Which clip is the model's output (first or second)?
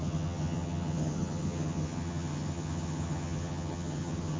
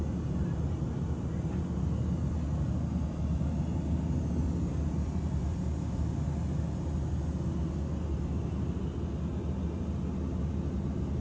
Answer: first